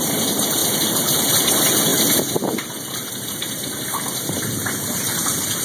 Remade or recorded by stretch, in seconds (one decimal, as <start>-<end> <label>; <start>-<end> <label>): 0.0-5.6 remade